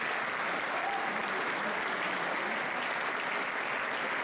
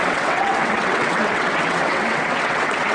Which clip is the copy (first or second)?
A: second